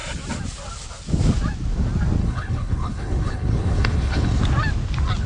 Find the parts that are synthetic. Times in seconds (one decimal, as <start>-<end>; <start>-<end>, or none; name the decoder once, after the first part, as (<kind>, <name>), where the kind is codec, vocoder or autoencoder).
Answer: 2.2-4.4 (codec, HILCodec)